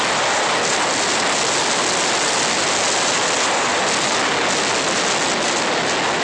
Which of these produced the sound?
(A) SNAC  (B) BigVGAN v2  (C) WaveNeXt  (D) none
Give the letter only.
D